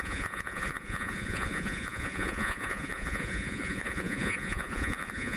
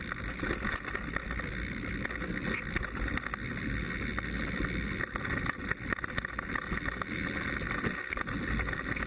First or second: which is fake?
first